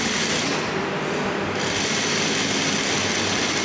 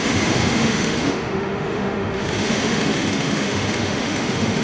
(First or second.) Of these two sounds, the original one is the first